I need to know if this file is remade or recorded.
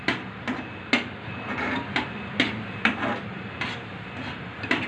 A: recorded